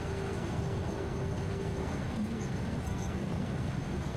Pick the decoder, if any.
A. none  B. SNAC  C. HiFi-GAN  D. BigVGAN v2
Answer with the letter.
B